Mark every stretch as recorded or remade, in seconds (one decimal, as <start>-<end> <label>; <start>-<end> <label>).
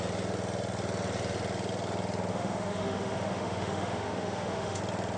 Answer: 0.0-2.3 recorded; 2.3-4.8 remade; 4.8-5.2 recorded